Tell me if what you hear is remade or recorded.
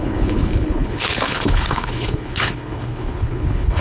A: remade